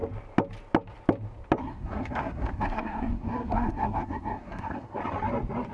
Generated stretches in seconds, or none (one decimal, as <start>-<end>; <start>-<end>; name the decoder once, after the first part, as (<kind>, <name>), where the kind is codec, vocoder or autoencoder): 1.6-5.0 (codec, SNAC)